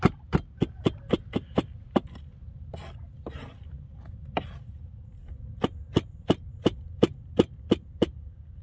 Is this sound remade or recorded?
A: recorded